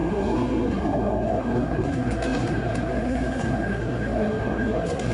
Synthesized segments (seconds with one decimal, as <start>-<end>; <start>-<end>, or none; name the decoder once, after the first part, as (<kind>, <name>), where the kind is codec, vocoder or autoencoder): 0.0-5.1 (codec, SNAC)